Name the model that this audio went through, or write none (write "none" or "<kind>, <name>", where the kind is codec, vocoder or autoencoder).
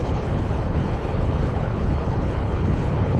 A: codec, HILCodec